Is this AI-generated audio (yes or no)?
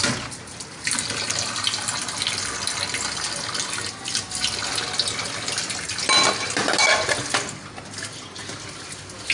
no